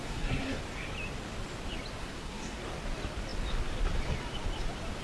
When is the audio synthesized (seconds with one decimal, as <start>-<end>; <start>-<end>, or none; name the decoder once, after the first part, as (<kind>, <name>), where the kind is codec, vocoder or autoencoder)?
0.0-0.6 (codec, SNAC); 2.0-2.6

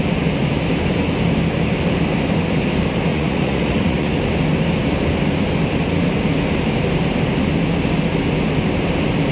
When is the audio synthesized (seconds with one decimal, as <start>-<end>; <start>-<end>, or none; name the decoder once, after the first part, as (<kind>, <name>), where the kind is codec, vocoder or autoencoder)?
3.1-4.1 (vocoder, Vocos)

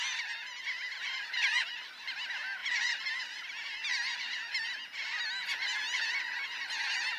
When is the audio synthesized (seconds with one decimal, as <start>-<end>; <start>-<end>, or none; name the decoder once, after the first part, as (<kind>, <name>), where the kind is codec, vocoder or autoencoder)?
1.6-2.1 (vocoder, BigVGAN v2); 2.6-3.1

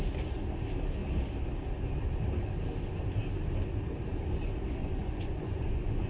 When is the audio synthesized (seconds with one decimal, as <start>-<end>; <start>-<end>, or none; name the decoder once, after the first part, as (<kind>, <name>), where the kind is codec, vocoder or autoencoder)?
4.8-6.1 (vocoder, Vocos)

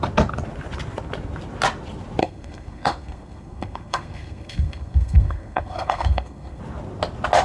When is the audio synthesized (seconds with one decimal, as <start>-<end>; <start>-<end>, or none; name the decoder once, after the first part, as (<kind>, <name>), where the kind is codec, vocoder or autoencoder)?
2.2-6.6 (codec, SNAC)

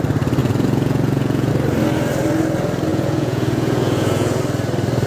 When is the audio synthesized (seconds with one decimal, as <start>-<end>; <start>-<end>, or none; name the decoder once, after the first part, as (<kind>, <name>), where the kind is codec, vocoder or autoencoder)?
0.4-1.5 (vocoder, Vocos); 2.9-4.4

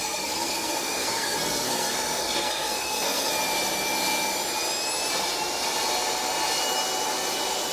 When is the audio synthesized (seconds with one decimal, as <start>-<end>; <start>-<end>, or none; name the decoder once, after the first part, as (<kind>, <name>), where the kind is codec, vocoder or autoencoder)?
0.0-3.3 (codec, SNAC)

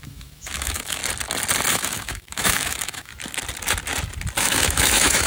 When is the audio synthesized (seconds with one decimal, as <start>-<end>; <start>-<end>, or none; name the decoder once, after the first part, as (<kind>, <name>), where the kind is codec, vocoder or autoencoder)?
0.0-1.0 (autoencoder, DAC-VAE); 1.7-3.1; 4.4-5.3